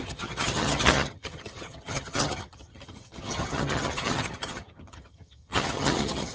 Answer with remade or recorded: remade